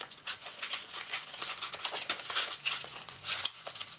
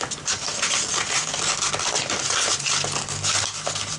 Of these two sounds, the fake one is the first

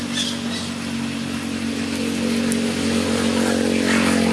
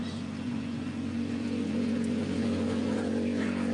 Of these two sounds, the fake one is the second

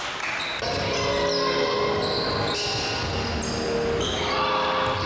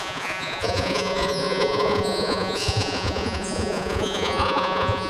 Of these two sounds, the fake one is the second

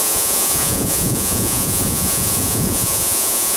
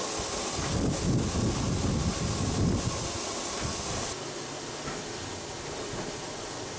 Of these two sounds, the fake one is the first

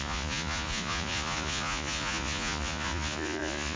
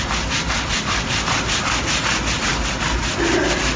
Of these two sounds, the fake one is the first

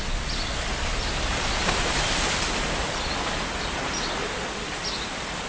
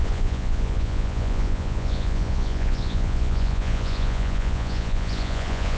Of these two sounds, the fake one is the second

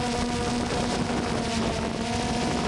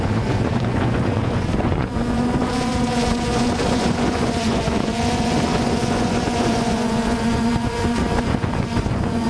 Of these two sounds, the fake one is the second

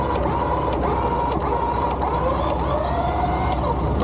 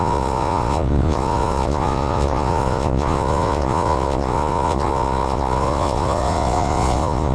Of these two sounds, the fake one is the second